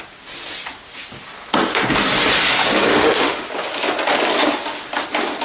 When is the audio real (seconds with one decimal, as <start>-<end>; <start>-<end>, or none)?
0.0-2.9; 3.5-5.4